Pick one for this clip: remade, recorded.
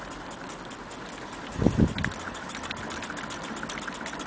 recorded